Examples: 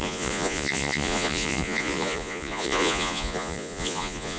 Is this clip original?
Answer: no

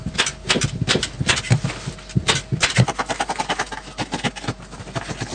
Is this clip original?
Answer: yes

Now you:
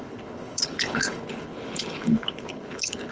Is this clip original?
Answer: no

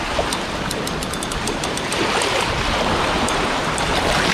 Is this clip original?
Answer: yes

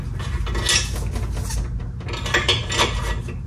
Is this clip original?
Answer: yes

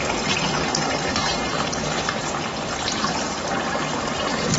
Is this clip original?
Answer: yes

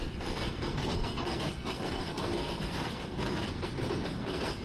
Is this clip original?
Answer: no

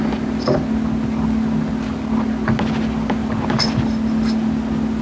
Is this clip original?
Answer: yes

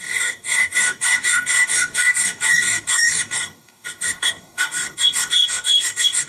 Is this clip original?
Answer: no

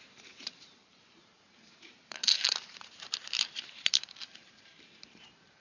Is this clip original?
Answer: no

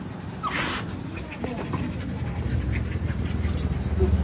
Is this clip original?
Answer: yes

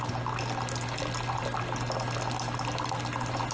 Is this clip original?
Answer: yes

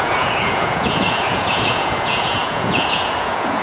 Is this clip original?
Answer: no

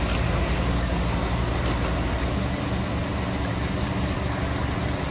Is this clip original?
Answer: yes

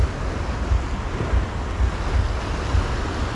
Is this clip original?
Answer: yes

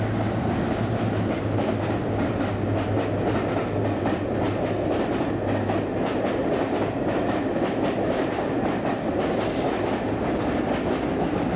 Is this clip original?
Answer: yes